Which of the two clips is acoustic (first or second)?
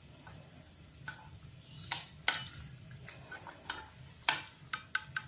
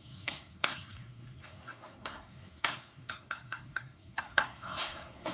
first